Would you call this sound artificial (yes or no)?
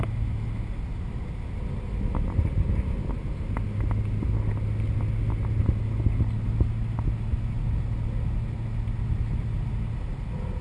no